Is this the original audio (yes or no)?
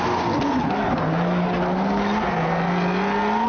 yes